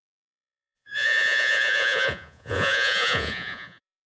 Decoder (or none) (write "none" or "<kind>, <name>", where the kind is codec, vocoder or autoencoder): vocoder, Vocos